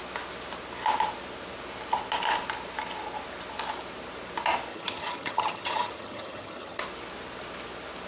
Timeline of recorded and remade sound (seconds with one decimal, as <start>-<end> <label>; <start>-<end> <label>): 0.0-4.7 recorded; 4.7-6.8 remade; 6.8-8.1 recorded

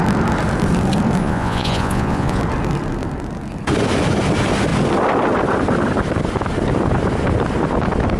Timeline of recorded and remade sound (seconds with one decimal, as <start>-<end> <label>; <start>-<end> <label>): 0.0-1.2 recorded; 1.2-2.4 remade; 2.4-8.2 recorded

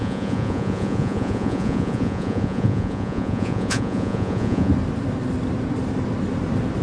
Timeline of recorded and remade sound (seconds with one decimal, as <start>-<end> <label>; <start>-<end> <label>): 0.0-4.7 remade; 4.7-6.8 recorded

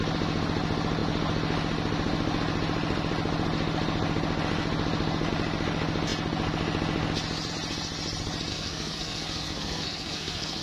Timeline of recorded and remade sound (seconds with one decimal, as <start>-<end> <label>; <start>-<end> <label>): 0.0-8.5 recorded; 8.5-10.6 remade

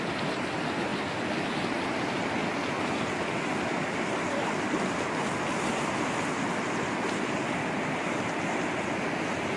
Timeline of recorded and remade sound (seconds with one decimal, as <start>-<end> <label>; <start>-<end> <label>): 0.0-9.6 recorded

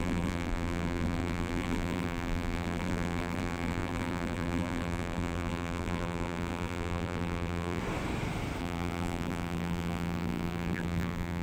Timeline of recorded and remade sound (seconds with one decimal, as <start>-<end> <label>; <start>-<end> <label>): 0.0-7.8 remade; 7.8-8.6 recorded; 8.6-11.4 remade

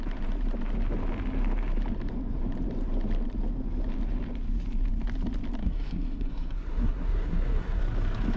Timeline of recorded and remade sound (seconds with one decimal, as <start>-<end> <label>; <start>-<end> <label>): 0.0-5.6 recorded; 5.6-7.8 remade; 7.8-8.4 recorded